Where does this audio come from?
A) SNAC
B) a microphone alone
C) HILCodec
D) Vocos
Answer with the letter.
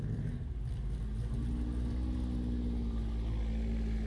B